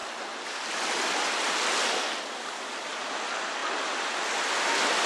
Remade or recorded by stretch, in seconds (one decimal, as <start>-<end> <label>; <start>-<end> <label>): 0.0-5.1 recorded